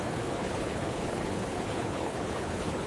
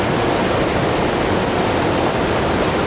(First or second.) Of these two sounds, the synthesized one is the first